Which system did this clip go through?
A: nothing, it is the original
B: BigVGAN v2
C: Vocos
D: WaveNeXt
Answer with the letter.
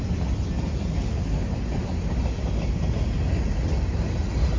A